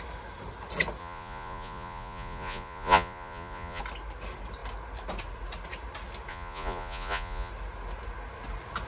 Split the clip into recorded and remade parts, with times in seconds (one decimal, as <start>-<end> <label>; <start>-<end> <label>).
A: 0.0-1.0 recorded; 1.0-3.8 remade; 3.8-6.3 recorded; 6.3-7.5 remade; 7.5-8.9 recorded